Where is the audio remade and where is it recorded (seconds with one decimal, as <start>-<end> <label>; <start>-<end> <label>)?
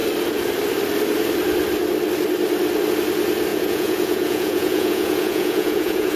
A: 0.0-3.5 recorded; 3.5-6.2 remade